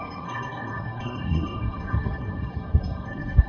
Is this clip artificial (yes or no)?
yes